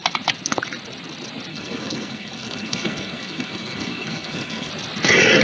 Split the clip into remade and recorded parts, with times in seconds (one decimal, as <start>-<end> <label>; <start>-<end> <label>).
0.0-1.5 recorded; 1.5-4.7 remade; 4.7-5.4 recorded